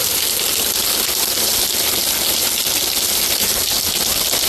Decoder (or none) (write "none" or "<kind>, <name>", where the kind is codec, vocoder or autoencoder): none